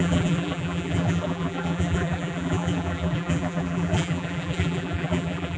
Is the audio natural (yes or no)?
no